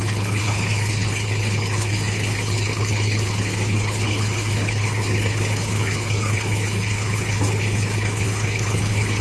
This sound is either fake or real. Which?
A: fake